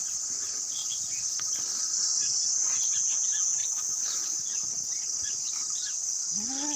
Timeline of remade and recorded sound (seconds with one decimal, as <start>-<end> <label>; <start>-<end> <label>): 0.0-0.8 remade; 0.8-2.1 recorded; 2.1-3.6 remade; 3.6-6.8 recorded